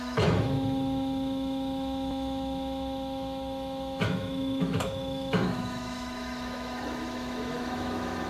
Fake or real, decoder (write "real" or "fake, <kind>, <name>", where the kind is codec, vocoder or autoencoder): fake, autoencoder, DAC-VAE